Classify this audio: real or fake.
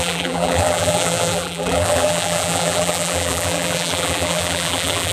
fake